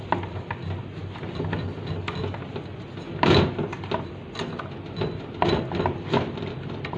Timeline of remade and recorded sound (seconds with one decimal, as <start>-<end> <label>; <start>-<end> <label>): 0.0-7.0 recorded